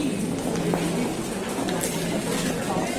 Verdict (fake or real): real